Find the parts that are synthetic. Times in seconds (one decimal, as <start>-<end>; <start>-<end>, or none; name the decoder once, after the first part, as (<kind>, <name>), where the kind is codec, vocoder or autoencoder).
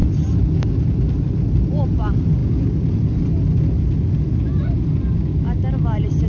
none